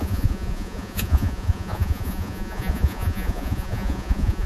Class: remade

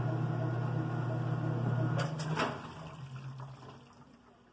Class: recorded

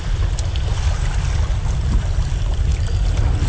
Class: recorded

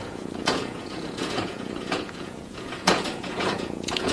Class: remade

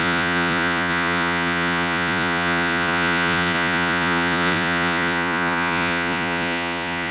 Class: remade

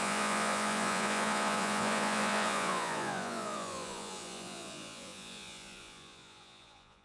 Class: remade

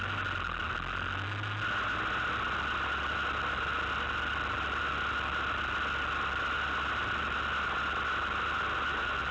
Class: recorded